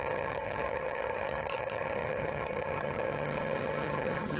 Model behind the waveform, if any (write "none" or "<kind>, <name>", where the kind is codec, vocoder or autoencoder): vocoder, HiFi-GAN